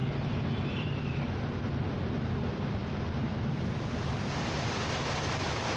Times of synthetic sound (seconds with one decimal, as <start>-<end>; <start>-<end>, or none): 0.6-5.8